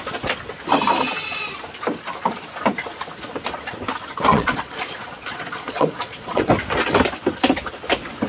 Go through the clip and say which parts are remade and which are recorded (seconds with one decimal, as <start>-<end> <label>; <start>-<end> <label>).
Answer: 0.0-4.3 recorded; 4.3-6.5 remade; 6.5-8.3 recorded